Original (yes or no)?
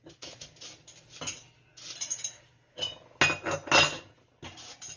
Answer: yes